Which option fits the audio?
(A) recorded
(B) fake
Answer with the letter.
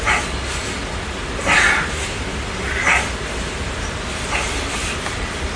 A